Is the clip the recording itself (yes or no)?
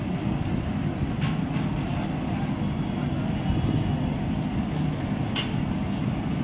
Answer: yes